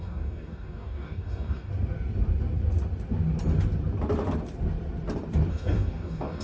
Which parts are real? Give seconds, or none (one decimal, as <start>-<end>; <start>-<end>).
1.7-5.5